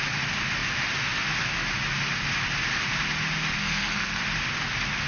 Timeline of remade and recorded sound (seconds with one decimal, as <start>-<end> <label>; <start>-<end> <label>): 0.0-3.6 recorded; 3.6-4.2 remade; 4.2-5.1 recorded